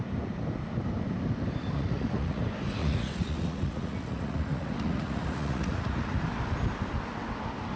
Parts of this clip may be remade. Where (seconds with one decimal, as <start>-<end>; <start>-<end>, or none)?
1.6-2.4; 2.8-6.2

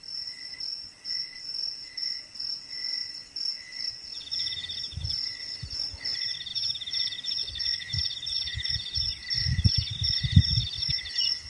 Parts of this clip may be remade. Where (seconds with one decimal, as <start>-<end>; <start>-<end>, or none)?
none

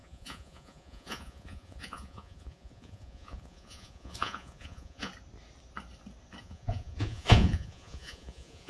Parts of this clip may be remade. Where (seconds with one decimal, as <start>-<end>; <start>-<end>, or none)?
0.0-5.1; 6.4-8.7

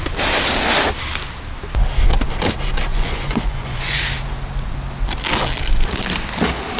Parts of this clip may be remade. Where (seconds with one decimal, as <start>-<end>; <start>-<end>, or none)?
2.9-4.0

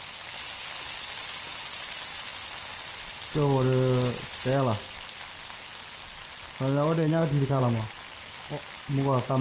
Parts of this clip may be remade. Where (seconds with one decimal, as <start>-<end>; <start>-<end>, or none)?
none

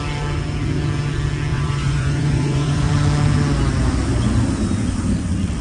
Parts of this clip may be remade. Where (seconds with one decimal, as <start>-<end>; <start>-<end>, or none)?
1.5-2.9